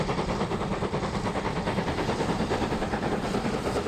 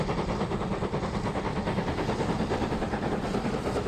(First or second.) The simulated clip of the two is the first